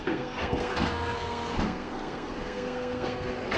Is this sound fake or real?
fake